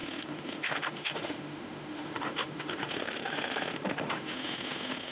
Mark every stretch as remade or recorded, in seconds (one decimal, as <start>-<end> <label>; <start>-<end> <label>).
0.0-5.1 remade